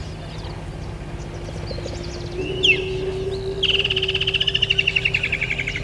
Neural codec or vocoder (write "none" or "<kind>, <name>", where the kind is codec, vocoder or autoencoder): none